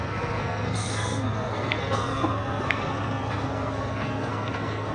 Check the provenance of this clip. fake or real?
fake